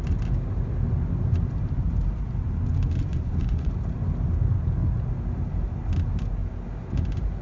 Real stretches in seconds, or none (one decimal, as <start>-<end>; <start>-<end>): 0.0-3.1; 3.7-7.4